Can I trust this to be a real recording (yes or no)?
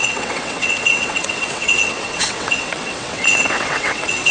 no